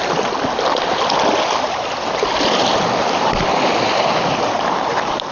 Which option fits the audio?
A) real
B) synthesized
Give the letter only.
A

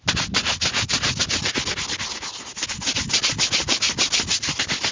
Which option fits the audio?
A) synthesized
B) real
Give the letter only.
B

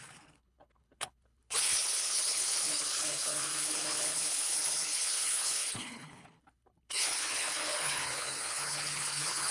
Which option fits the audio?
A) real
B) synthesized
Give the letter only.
B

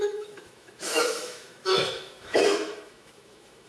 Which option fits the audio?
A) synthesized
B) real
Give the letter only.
A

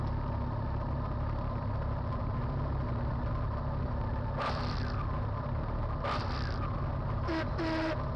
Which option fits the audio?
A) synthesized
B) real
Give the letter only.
B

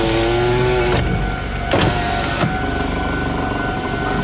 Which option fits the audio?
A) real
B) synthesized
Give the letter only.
A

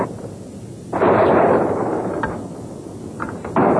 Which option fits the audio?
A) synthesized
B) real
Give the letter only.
B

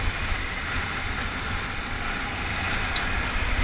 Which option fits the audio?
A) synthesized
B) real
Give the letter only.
B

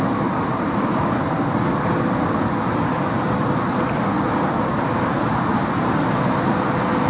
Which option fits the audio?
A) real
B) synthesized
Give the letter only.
A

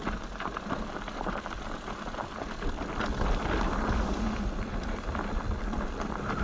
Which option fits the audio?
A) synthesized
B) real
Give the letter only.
B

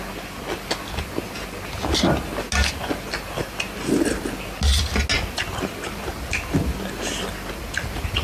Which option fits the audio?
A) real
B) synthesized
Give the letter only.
A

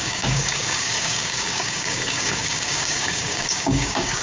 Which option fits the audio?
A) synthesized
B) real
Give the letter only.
A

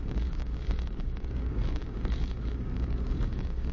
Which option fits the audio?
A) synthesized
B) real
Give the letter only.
A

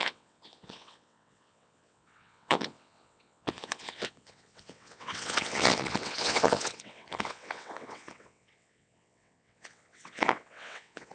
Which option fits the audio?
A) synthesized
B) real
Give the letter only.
A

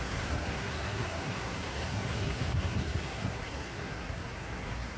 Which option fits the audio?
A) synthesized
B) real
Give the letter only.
A